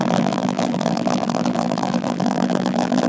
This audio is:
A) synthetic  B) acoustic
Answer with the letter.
A